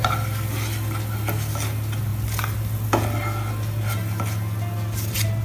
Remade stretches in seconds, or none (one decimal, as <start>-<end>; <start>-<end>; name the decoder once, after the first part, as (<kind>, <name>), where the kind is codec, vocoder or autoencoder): none